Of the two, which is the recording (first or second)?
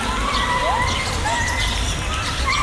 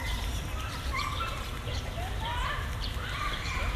first